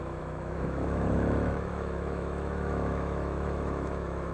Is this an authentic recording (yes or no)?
no